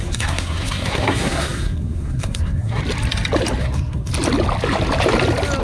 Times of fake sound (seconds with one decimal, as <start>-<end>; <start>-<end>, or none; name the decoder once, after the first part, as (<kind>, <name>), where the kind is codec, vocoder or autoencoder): 0.0-2.8 (codec, SNAC); 3.6-4.1